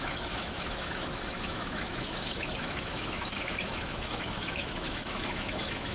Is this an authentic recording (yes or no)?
no